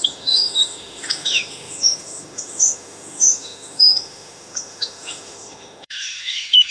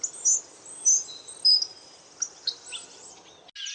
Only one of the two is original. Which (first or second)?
second